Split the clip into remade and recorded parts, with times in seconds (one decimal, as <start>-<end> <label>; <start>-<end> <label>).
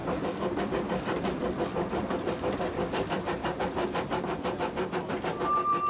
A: 0.0-0.7 recorded; 0.7-1.4 remade; 1.4-2.3 recorded; 2.3-3.8 remade; 3.8-5.1 recorded; 5.1-5.9 remade